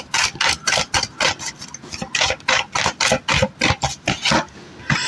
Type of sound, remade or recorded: recorded